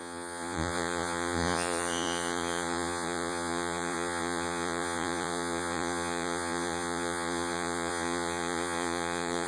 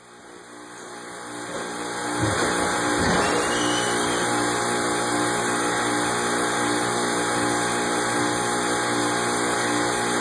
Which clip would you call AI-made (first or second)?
first